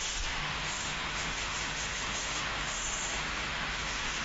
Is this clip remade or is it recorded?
remade